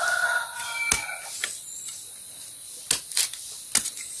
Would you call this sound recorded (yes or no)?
yes